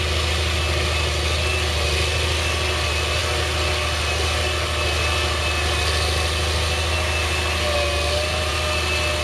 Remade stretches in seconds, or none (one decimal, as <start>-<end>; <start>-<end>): none